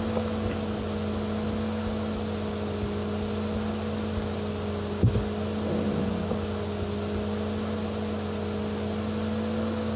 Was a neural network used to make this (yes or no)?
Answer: no